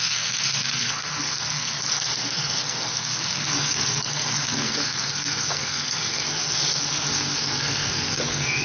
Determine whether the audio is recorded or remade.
remade